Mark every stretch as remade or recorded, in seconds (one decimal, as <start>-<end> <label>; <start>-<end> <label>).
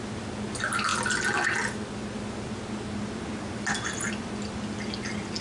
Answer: 0.0-5.4 recorded